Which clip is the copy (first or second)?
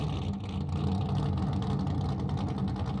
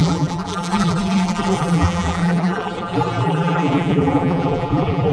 second